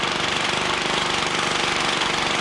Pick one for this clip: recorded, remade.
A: recorded